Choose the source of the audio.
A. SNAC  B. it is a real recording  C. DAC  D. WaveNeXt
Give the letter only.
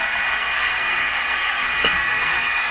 A